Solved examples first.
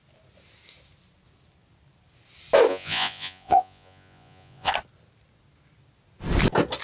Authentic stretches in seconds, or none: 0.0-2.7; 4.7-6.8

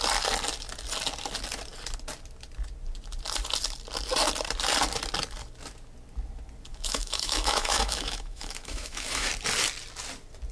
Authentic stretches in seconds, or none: 0.0-6.7; 9.3-10.5